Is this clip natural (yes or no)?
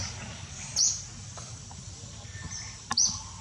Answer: yes